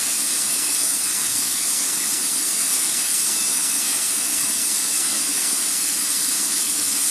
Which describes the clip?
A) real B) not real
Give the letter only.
B